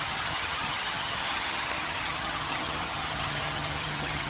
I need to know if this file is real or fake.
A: fake